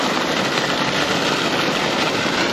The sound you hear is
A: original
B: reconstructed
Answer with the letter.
A